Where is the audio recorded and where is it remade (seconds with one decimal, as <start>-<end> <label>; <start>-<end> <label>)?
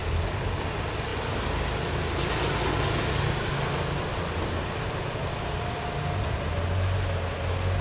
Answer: 0.0-7.8 recorded